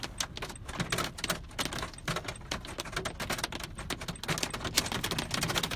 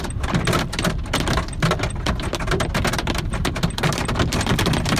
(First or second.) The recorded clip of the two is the first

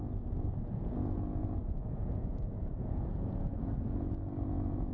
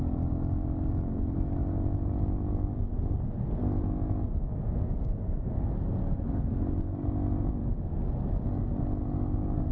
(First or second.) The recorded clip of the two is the second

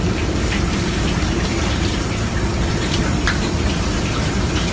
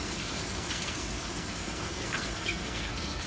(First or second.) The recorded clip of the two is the first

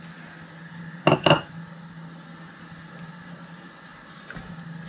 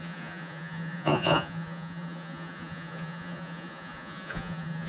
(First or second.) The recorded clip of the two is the first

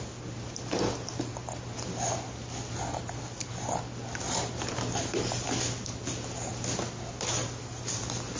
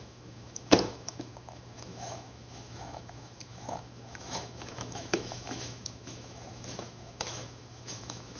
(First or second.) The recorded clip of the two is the first